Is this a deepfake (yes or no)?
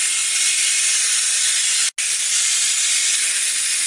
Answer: no